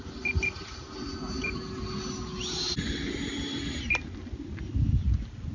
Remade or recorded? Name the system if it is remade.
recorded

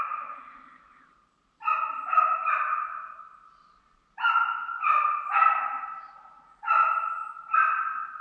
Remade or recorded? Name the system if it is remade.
recorded